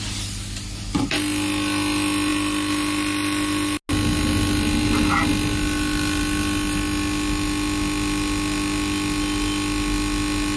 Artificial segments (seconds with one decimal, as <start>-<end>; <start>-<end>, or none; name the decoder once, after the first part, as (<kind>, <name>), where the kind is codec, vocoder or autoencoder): none